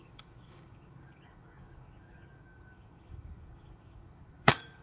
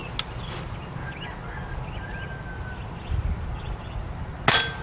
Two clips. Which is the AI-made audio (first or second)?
first